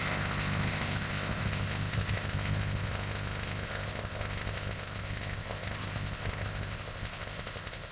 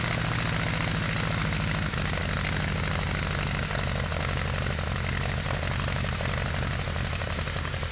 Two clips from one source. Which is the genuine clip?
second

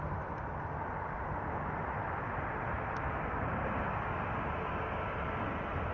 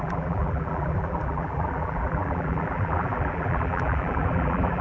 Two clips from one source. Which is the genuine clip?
first